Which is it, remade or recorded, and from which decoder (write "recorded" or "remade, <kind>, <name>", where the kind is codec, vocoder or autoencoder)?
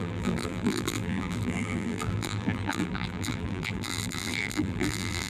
remade, vocoder, BigVGAN v2